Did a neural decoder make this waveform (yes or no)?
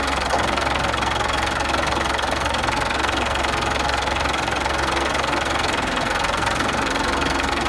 yes